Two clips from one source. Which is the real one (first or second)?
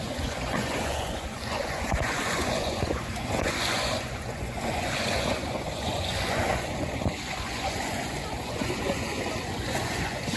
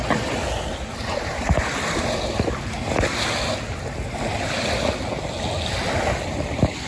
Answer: second